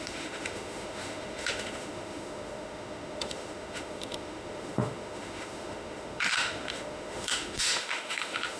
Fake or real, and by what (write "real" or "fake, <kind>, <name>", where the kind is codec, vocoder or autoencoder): fake, autoencoder, DAC-VAE